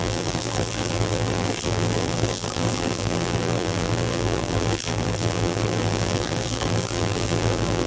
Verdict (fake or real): fake